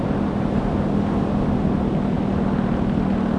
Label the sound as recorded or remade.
recorded